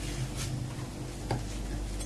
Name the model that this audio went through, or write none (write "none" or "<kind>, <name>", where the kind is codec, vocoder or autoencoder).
none